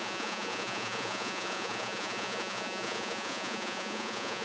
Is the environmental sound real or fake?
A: fake